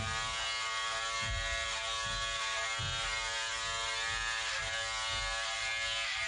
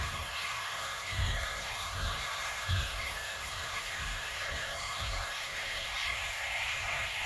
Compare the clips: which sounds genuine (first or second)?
first